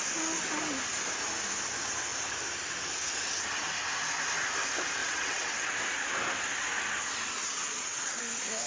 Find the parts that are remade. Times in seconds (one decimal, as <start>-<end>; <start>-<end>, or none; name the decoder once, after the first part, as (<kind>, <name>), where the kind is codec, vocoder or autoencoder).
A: 5.0-5.7 (vocoder, WaveNeXt); 7.4-8.2